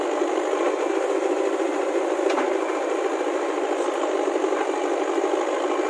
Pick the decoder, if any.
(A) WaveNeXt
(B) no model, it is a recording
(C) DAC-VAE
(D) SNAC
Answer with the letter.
B